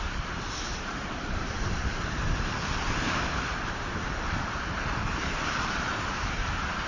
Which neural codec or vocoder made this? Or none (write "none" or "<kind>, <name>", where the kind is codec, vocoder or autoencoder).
vocoder, BigVGAN v2